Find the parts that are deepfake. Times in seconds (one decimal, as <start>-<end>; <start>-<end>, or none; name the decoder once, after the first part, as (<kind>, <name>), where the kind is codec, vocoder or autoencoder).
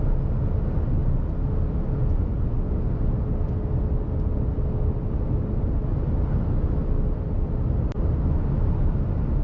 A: none